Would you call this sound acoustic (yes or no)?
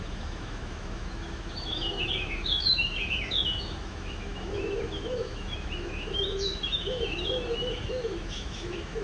no